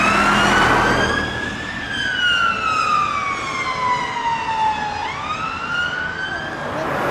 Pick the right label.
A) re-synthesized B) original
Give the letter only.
B